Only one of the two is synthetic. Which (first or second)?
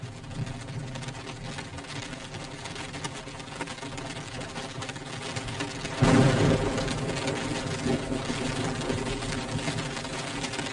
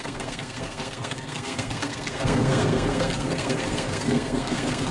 second